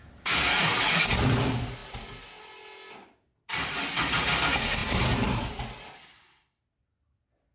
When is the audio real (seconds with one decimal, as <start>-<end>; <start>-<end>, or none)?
0.0-7.5